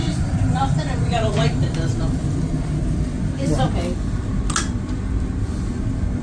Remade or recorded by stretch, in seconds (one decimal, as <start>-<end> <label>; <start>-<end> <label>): 0.0-3.7 remade; 3.7-6.2 recorded